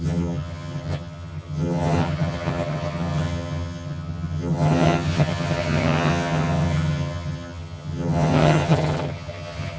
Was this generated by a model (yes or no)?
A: yes